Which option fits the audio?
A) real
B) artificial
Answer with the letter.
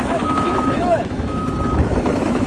B